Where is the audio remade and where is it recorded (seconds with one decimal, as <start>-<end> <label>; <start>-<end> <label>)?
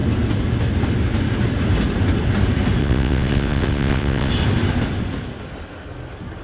0.0-2.8 recorded; 2.8-4.3 remade; 4.3-6.4 recorded